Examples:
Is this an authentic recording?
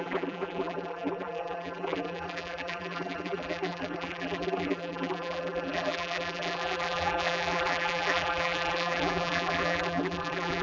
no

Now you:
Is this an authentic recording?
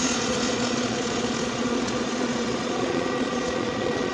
no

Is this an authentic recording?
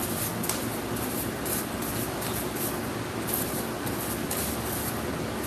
yes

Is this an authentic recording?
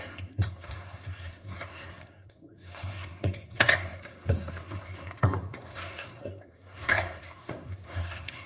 no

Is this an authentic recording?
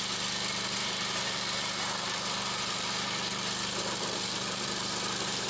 no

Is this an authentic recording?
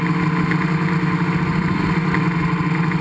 yes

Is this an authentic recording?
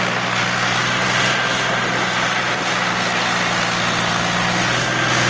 yes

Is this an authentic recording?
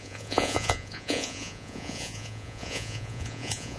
no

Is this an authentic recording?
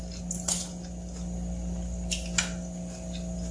yes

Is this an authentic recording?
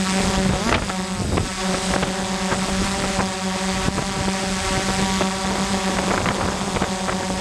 yes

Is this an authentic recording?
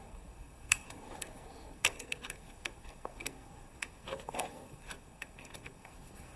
no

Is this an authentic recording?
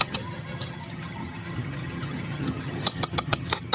no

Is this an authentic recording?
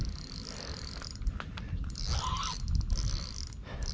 yes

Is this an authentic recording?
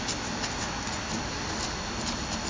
yes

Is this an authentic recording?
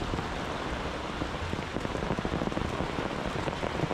yes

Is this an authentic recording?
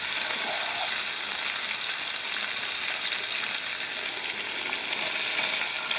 yes